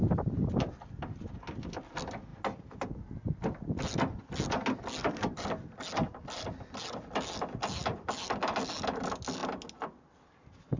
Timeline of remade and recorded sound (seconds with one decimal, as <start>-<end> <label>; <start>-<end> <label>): 0.0-10.8 recorded